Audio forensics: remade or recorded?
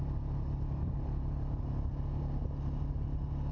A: recorded